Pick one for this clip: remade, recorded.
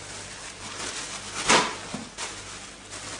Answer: recorded